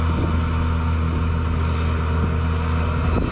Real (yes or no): yes